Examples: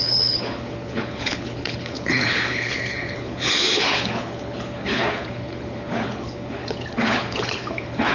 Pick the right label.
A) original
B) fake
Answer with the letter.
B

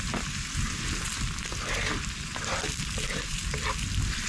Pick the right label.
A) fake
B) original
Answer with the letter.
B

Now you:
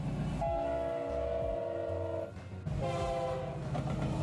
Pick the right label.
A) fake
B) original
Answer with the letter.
B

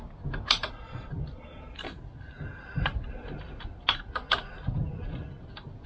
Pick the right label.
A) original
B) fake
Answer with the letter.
A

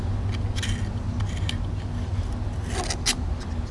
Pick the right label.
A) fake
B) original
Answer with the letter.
B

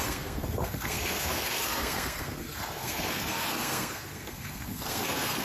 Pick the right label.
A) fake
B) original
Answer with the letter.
A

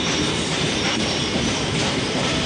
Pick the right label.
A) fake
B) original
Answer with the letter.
A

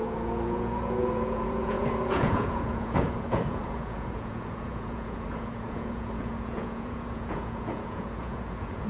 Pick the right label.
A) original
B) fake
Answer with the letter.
B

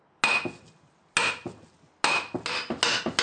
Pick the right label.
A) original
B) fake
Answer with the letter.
A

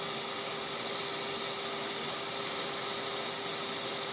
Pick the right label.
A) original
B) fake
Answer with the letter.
A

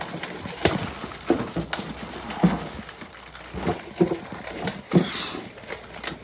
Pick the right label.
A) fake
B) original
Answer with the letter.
B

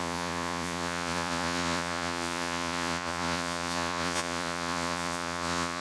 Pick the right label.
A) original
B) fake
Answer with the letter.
B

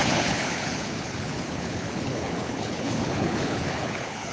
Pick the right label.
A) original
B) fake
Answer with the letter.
B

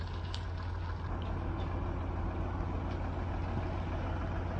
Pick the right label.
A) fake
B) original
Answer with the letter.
B